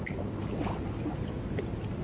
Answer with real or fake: real